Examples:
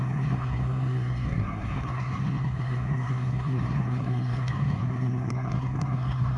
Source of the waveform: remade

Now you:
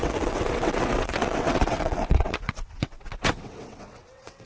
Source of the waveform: remade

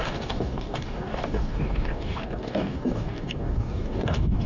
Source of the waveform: remade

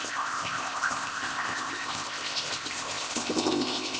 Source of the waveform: remade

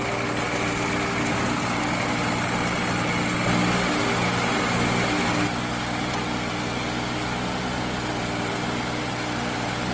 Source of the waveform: recorded